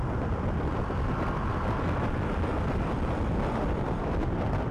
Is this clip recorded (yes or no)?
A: yes